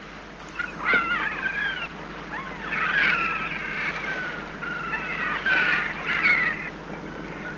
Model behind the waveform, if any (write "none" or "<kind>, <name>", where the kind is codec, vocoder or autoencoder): none